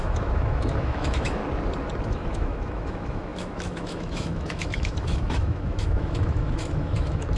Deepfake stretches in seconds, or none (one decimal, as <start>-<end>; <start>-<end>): 0.0-1.4; 2.1-7.4